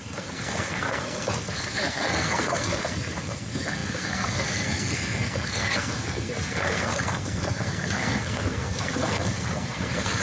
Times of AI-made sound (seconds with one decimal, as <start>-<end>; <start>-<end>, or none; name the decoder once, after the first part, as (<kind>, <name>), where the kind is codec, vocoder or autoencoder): 0.0-10.2 (codec, SNAC)